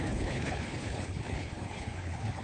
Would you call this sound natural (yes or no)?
no